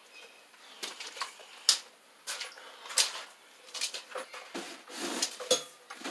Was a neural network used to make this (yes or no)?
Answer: no